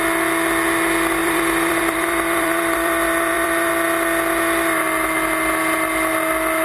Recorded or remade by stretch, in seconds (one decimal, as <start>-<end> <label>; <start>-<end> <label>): 0.0-1.2 recorded; 1.2-3.7 remade; 3.7-6.6 recorded

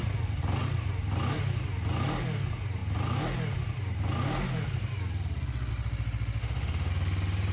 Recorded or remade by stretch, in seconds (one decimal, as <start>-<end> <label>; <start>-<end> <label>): 0.0-6.4 recorded; 6.4-6.9 remade; 6.9-7.5 recorded

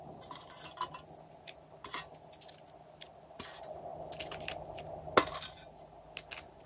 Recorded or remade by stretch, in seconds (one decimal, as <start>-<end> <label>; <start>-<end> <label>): 0.0-6.7 recorded

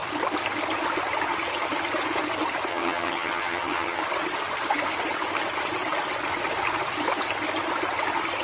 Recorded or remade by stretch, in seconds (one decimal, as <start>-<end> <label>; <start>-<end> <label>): 0.0-2.7 recorded; 2.7-4.0 remade; 4.0-8.4 recorded

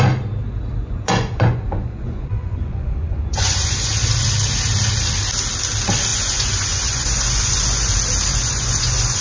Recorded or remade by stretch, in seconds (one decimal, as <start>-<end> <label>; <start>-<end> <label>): 0.0-0.8 recorded; 0.8-3.9 remade; 3.9-6.1 recorded; 6.1-7.9 remade; 7.9-8.3 recorded; 8.3-9.2 remade

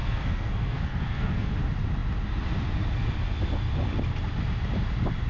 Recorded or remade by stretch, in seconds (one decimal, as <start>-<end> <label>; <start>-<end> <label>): 0.0-1.5 remade; 1.5-5.3 recorded